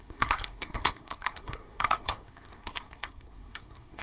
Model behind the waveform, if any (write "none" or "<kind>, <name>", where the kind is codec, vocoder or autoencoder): codec, SNAC